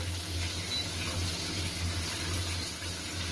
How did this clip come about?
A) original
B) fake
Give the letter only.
A